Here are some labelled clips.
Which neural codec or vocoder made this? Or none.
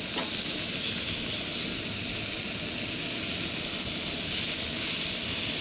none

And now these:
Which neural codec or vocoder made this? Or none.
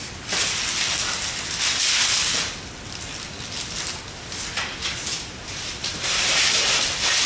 none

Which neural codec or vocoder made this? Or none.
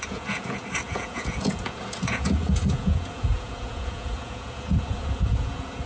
vocoder, Vocos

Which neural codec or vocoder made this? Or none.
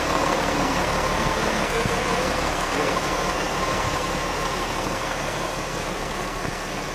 codec, SNAC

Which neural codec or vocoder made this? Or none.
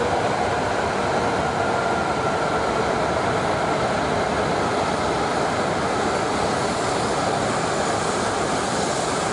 none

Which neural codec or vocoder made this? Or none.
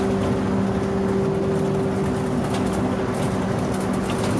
none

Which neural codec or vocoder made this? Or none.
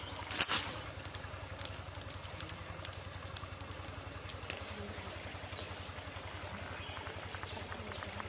none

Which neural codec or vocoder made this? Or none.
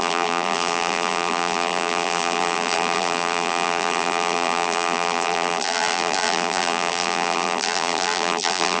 vocoder, BigVGAN v2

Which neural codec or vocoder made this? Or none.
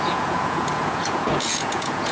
vocoder, Vocos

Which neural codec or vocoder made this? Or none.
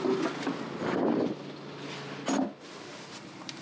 none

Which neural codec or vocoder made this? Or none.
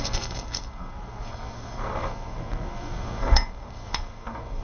codec, SNAC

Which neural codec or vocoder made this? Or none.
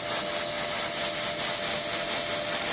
none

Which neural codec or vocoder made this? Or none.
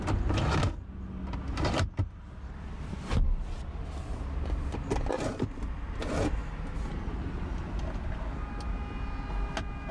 none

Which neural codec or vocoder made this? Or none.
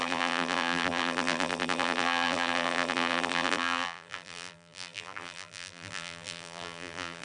vocoder, BigVGAN v2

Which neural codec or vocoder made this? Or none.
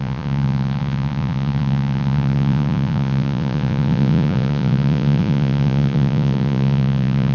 vocoder, Vocos